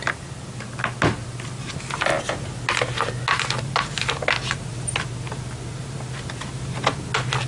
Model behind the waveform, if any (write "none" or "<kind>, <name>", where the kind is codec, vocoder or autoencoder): none